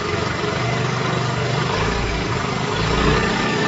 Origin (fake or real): fake